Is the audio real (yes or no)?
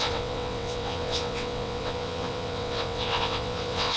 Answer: no